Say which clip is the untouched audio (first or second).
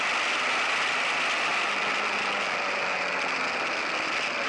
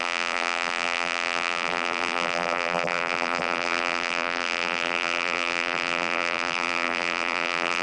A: first